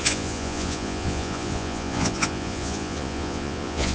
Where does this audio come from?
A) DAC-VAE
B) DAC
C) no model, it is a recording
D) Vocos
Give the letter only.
D